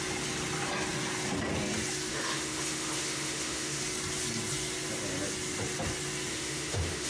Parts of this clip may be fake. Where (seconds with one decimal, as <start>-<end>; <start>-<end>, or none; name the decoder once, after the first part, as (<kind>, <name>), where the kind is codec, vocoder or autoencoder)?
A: 2.1-3.8 (autoencoder, DAC-VAE); 6.3-7.1